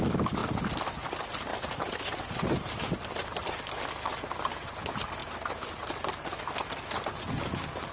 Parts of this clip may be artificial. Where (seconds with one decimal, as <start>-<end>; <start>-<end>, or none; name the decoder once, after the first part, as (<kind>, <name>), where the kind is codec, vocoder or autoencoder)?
1.5-3.4 (vocoder, BigVGAN v2); 5.2-6.4